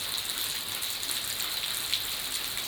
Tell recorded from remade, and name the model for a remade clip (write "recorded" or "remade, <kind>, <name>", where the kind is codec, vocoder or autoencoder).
recorded